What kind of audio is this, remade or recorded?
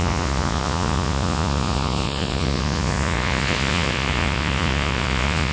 remade